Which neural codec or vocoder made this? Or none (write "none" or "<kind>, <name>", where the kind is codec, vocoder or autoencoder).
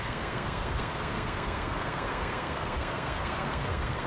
codec, SNAC